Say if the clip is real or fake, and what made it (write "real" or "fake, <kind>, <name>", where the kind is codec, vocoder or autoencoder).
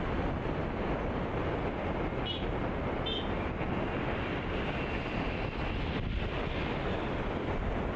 real